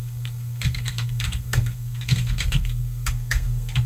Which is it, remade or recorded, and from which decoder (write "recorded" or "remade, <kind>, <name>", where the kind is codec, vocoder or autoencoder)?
remade, codec, SNAC